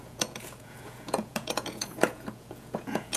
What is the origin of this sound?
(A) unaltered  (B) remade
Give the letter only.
B